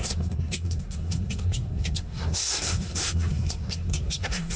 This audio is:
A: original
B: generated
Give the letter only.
B